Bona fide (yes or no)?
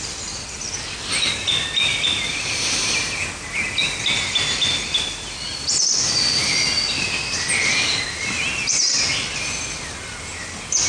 yes